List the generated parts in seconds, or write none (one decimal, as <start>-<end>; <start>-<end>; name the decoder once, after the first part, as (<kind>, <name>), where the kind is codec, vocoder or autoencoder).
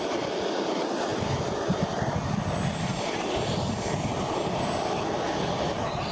none